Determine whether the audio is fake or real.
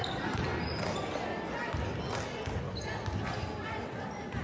real